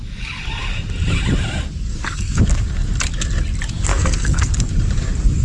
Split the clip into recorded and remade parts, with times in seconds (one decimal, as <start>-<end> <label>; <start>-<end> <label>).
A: 0.0-1.9 recorded; 1.9-2.4 remade; 2.4-3.9 recorded; 3.9-4.5 remade; 4.5-5.4 recorded